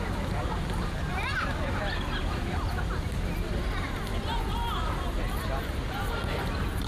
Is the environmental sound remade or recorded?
recorded